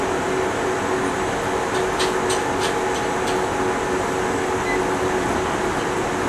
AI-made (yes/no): no